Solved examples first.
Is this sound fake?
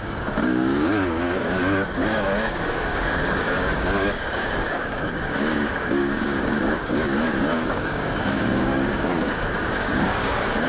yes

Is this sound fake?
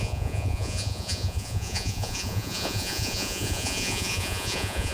yes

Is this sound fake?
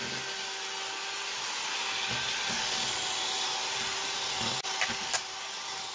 no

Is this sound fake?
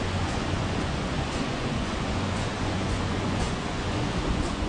yes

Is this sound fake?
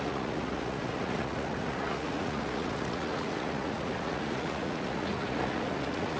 yes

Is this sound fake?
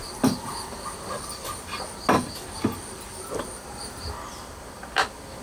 no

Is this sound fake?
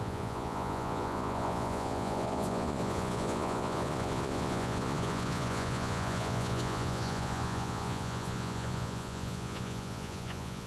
yes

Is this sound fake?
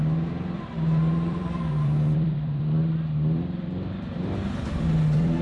yes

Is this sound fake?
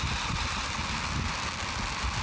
no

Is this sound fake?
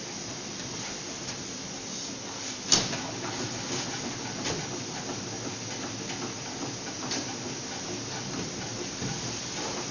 no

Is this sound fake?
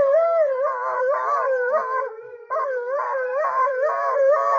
yes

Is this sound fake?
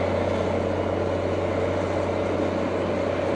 no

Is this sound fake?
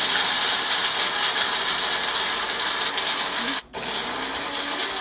no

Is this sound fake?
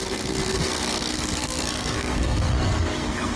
yes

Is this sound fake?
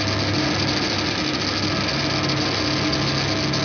no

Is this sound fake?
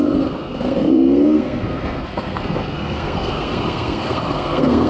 yes